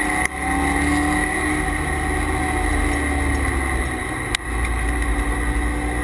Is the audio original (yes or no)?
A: yes